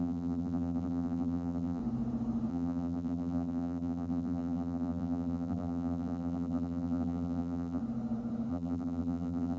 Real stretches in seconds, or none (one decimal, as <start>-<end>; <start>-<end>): 1.8-2.5; 7.8-8.5